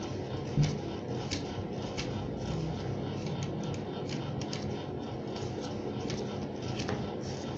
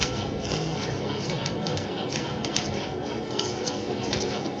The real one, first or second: first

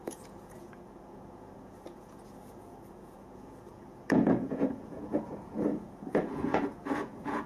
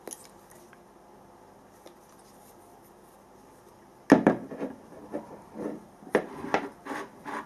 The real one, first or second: second